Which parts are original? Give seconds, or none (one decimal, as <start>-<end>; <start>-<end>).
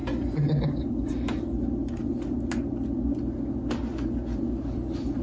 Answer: 0.0-5.2